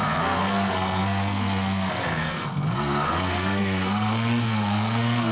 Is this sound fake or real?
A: fake